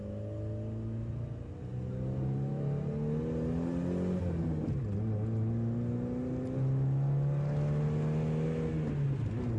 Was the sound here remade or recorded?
recorded